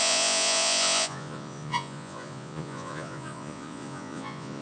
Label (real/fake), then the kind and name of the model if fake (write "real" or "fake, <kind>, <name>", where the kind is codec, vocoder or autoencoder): fake, vocoder, Vocos